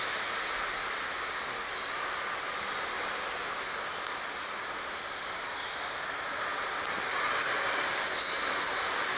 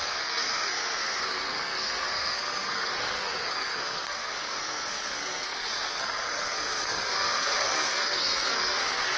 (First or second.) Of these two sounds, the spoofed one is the second